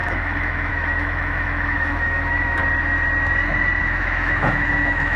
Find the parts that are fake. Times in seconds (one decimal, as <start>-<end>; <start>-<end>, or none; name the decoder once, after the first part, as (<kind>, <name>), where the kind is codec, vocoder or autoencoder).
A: 0.0-2.6 (autoencoder, DAC-VAE); 3.8-5.2